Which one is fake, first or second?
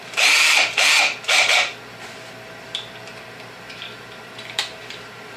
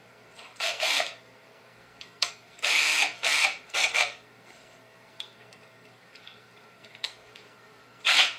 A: second